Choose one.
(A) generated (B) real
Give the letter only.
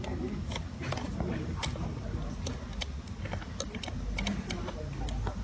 B